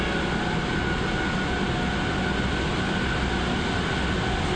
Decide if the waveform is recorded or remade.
recorded